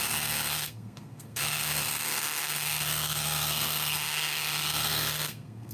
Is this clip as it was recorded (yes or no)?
no